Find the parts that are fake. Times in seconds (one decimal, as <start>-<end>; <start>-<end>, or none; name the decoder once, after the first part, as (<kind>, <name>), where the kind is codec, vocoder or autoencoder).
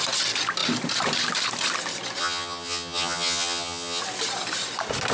2.2-4.0 (vocoder, HiFi-GAN)